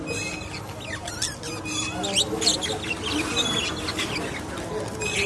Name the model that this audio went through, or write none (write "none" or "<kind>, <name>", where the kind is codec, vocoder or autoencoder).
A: none